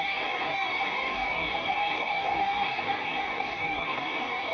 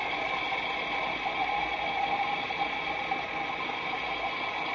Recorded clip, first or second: second